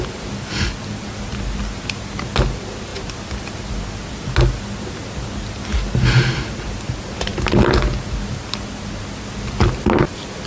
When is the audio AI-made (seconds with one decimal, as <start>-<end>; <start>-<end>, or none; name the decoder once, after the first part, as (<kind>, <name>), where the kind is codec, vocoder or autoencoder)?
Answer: none